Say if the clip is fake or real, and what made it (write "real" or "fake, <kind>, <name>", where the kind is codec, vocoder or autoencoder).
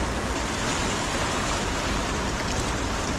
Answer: real